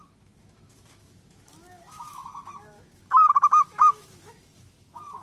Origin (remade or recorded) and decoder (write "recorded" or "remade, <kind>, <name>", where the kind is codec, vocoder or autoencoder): remade, autoencoder, DAC-VAE